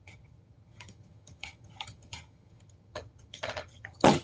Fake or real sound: fake